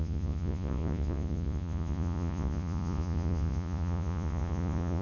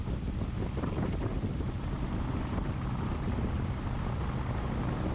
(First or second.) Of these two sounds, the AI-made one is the first